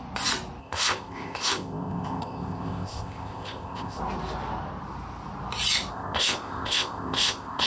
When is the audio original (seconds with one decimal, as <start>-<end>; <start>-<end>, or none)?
0.0-0.6; 4.0-5.9